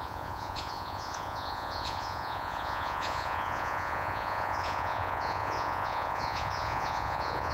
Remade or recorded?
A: remade